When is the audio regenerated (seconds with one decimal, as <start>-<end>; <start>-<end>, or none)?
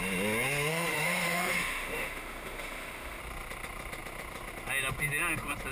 0.7-3.2